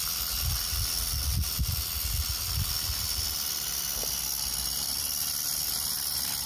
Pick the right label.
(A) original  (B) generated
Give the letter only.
A